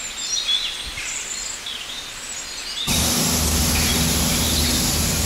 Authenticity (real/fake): real